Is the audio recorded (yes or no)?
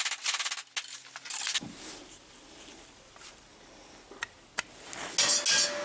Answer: yes